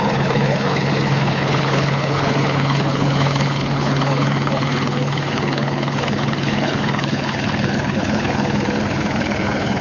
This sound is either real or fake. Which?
fake